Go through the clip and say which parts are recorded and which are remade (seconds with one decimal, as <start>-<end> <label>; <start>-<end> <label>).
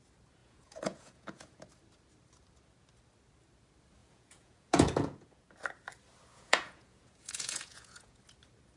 0.0-0.4 recorded; 0.4-1.6 remade; 1.6-4.0 recorded; 4.0-5.5 remade; 5.5-6.3 recorded; 6.3-8.2 remade; 8.2-8.8 recorded